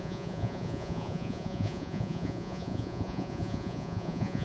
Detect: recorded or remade remade